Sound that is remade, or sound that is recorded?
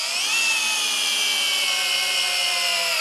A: recorded